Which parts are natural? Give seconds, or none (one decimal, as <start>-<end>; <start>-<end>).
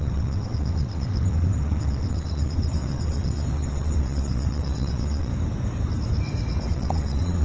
5.3-6.7